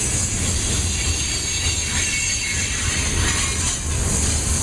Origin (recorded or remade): recorded